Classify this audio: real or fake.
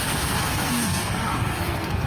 fake